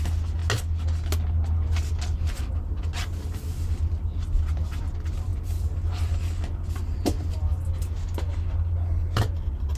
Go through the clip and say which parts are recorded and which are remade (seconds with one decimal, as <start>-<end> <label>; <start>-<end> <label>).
0.0-9.8 recorded